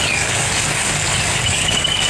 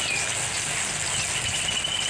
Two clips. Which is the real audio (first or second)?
second